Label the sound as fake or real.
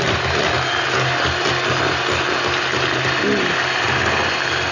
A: real